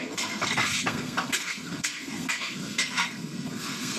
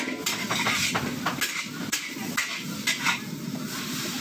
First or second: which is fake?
first